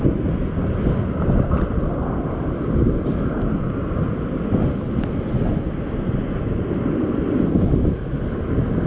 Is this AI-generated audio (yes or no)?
no